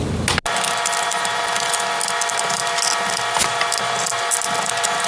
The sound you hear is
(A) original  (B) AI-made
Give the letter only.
A